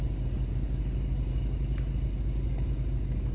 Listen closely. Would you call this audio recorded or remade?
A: recorded